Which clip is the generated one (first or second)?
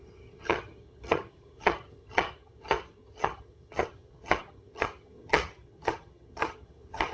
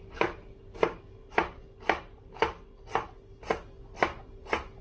first